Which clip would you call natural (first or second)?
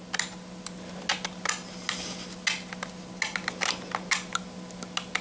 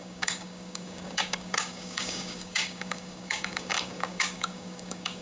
first